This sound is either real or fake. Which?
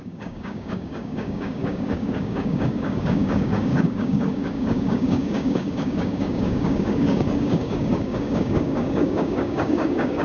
fake